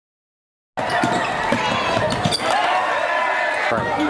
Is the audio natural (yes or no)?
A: yes